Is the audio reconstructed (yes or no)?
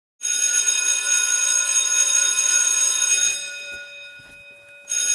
no